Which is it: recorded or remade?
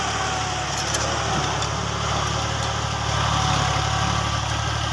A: recorded